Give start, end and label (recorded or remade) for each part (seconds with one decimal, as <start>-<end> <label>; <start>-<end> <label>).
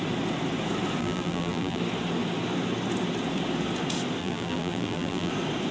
0.0-1.0 recorded; 1.0-1.8 remade; 1.8-4.2 recorded; 4.2-5.3 remade; 5.3-5.7 recorded